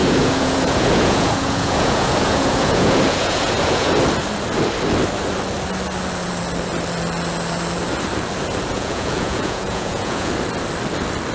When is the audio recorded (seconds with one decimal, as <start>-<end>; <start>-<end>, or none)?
4.0-8.7; 10.3-11.3